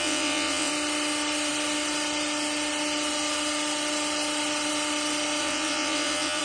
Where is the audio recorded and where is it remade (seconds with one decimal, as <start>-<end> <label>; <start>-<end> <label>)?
0.0-0.7 remade; 0.7-5.4 recorded; 5.4-6.4 remade

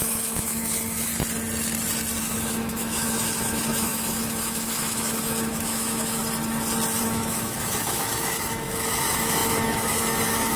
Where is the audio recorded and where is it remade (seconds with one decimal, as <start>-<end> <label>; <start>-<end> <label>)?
0.0-1.1 remade; 1.1-2.2 recorded; 2.2-6.2 remade; 6.2-7.0 recorded; 7.0-10.6 remade